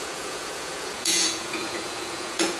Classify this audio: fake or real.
fake